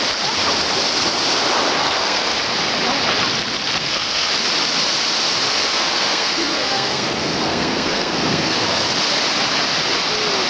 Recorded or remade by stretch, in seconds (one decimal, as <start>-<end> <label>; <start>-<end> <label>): 0.0-1.8 recorded; 1.8-2.3 remade; 2.3-3.8 recorded; 3.8-4.3 remade; 4.3-5.5 recorded; 5.5-8.9 remade; 8.9-10.5 recorded